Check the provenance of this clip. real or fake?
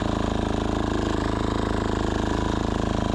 real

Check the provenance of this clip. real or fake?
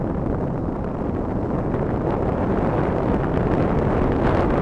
real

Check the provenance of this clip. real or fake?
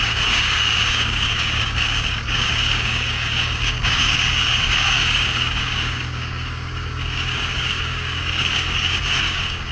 fake